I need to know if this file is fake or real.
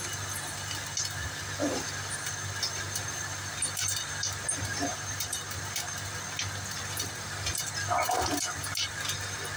real